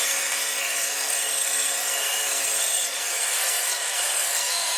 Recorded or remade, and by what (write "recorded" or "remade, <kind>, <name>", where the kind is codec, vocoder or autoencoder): remade, codec, SNAC